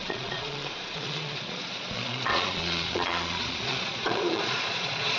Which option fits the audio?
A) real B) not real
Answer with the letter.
B